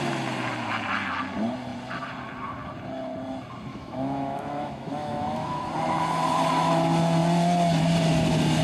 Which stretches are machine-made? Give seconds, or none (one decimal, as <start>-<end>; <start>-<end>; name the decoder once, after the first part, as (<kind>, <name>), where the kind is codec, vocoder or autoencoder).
3.7-5.7 (autoencoder, DAC-VAE)